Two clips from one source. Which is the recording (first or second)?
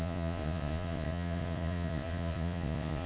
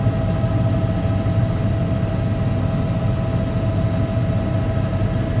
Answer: second